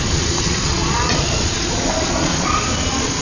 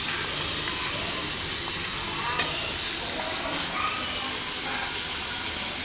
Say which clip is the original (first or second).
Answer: second